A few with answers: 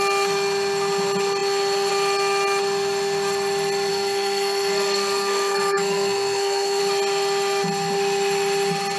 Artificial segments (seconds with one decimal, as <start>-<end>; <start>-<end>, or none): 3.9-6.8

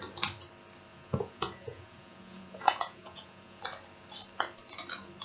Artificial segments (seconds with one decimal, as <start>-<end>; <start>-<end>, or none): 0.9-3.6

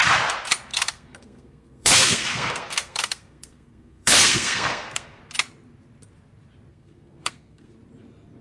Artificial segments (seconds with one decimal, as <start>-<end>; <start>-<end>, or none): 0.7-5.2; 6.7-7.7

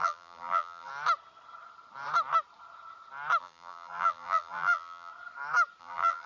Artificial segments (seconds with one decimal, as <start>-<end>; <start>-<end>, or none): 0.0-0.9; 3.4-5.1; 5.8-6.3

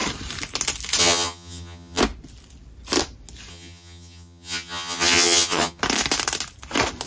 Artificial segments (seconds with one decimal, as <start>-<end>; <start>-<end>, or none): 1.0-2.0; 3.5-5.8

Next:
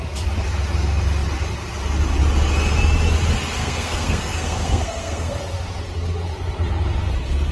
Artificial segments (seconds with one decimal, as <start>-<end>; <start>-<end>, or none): 3.6-5.4

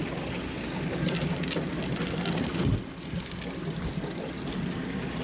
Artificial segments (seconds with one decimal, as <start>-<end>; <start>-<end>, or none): none